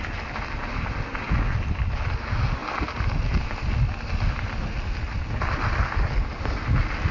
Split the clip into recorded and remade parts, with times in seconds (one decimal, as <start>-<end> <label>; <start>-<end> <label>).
0.0-7.1 recorded